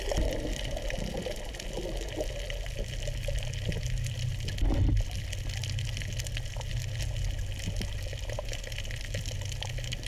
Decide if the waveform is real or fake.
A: real